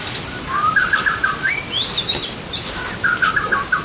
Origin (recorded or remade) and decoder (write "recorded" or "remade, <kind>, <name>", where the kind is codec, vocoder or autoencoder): recorded